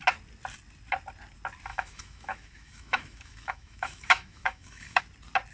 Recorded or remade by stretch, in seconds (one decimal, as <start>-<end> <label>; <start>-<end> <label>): 0.0-1.7 recorded; 1.7-5.0 remade; 5.0-5.5 recorded